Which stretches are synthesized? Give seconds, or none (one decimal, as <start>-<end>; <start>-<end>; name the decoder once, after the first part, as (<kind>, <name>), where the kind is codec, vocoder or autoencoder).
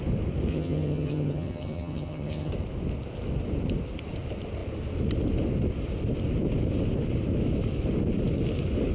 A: 0.5-2.5 (vocoder, HiFi-GAN)